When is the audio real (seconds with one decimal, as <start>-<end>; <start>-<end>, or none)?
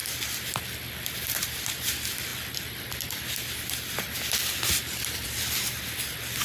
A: 0.0-6.4